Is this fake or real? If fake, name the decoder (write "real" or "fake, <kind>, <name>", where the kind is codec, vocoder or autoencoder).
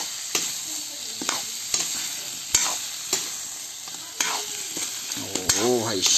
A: real